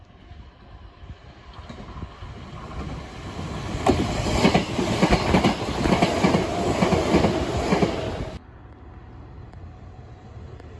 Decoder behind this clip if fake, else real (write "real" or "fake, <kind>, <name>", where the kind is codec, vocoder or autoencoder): real